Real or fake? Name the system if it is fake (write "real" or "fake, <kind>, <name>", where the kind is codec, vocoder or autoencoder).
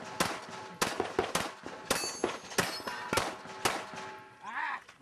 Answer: real